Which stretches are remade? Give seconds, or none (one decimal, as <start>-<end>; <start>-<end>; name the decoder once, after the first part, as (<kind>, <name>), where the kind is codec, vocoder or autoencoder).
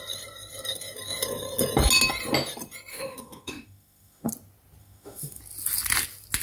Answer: 2.9-4.3 (autoencoder, DAC-VAE); 4.8-5.4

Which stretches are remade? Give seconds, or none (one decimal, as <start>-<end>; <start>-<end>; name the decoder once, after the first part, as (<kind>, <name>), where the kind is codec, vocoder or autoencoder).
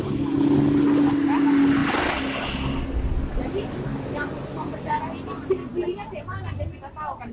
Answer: none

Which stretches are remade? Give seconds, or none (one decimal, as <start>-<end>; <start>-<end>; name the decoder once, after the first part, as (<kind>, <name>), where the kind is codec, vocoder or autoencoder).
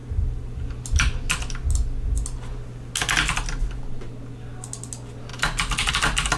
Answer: none